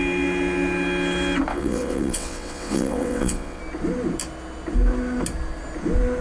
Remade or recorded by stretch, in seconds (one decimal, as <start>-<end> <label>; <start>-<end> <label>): 0.0-1.5 recorded; 1.5-3.6 remade; 3.6-6.2 recorded